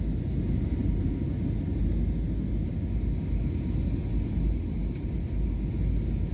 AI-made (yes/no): no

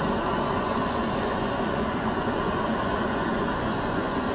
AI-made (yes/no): yes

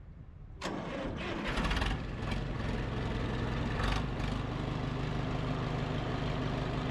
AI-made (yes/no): no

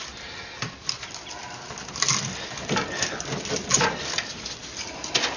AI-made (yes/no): no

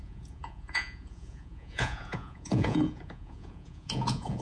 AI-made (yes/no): yes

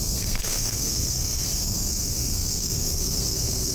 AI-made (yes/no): yes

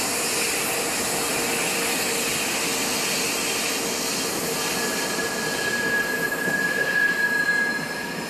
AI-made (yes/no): no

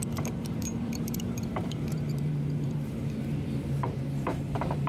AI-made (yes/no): yes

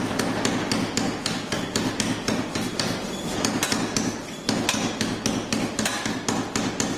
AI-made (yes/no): no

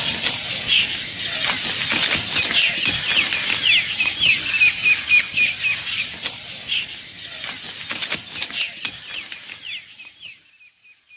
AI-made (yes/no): no